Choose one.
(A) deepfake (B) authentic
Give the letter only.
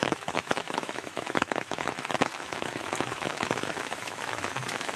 A